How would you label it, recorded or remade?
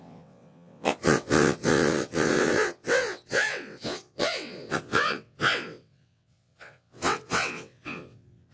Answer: remade